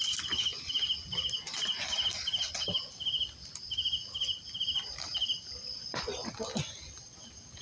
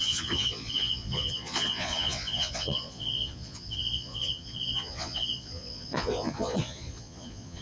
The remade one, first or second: second